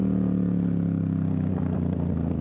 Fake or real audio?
real